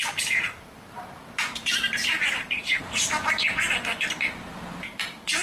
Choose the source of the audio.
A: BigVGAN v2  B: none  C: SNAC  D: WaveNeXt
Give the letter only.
A